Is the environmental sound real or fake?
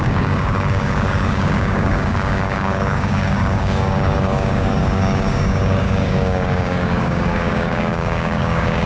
fake